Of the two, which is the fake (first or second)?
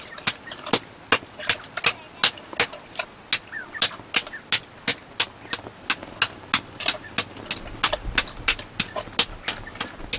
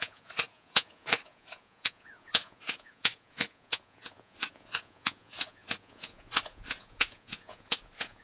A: second